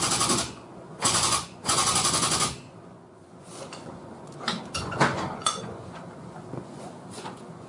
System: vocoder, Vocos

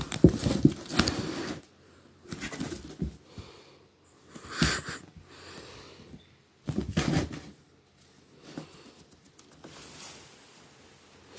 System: none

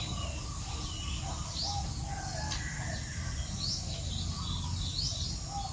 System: none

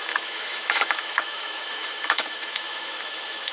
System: autoencoder, DAC-VAE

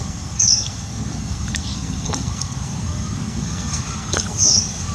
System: codec, SNAC